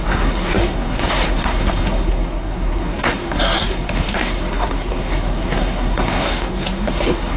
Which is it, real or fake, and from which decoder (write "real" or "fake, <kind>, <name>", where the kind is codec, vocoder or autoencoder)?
fake, codec, SNAC